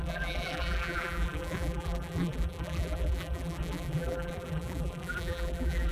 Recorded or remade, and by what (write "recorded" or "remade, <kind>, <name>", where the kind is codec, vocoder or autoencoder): remade, vocoder, BigVGAN v2